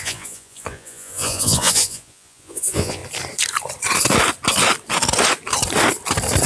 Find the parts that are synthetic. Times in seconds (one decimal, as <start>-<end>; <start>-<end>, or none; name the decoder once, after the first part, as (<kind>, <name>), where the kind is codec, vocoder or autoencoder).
0.0-3.0 (vocoder, Vocos)